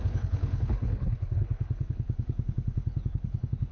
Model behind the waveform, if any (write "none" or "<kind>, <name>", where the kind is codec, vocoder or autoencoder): codec, HILCodec